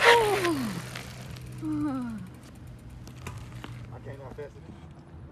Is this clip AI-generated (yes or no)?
no